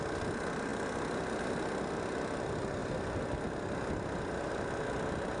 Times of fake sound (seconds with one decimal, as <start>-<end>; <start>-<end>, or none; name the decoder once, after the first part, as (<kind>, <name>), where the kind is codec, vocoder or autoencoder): 0.7-1.4 (vocoder, BigVGAN v2)